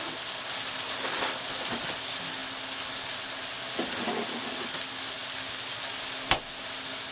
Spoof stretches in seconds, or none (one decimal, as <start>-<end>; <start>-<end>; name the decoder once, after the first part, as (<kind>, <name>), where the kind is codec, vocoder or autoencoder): none